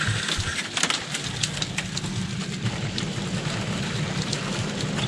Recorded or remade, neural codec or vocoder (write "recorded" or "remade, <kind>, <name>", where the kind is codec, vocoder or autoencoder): recorded